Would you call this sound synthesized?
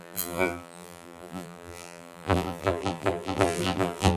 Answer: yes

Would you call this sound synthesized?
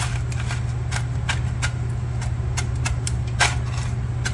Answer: no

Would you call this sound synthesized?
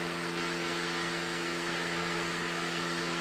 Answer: yes